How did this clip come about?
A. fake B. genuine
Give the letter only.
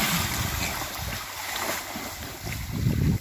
B